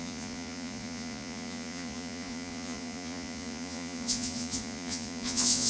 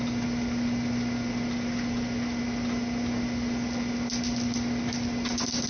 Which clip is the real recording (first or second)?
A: second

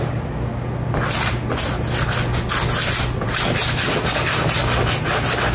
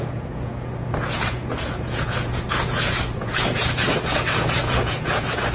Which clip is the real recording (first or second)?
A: first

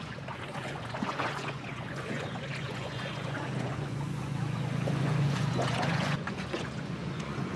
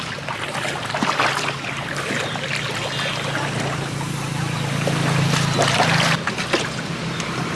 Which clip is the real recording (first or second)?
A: second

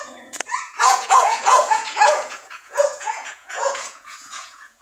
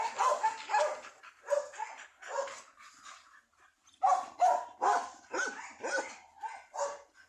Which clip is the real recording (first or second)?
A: second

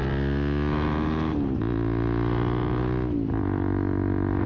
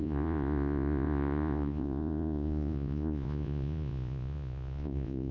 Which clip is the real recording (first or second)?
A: first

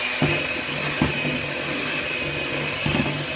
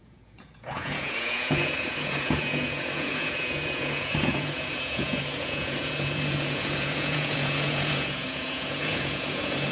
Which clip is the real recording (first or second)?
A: first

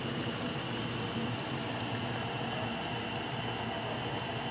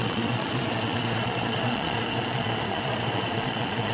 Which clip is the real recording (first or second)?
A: first